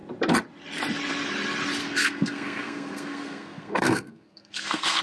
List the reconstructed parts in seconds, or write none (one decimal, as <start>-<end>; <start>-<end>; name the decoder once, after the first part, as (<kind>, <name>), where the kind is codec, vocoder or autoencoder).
1.8-5.0 (codec, SNAC)